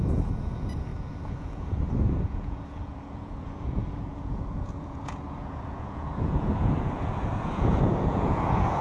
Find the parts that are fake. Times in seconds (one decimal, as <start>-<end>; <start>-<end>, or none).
0.0-8.8